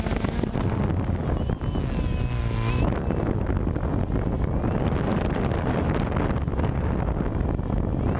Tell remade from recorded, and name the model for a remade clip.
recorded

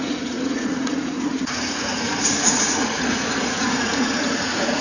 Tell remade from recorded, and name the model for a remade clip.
remade, vocoder, Vocos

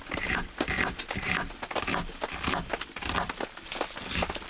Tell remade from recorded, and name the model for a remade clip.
remade, vocoder, BigVGAN v2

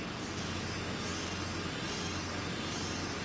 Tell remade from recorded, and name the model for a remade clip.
recorded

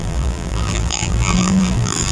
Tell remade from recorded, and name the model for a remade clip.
remade, vocoder, BigVGAN v2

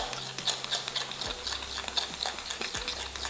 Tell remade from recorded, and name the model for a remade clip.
recorded